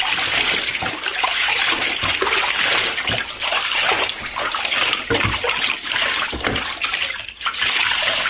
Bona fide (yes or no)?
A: no